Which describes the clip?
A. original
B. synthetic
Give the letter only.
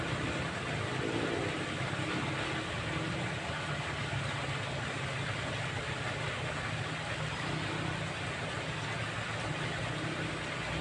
A